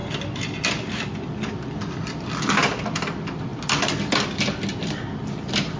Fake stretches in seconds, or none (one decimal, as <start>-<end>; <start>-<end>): none